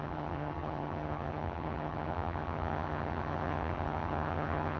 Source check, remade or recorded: remade